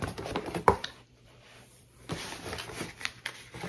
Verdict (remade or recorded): remade